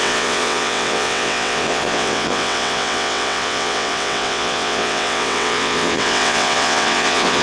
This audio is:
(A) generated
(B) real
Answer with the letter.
A